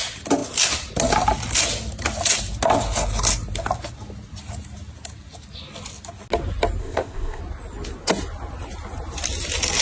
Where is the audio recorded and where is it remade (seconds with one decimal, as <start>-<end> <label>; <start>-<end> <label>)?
0.0-6.8 recorded; 6.8-7.4 remade; 7.4-9.8 recorded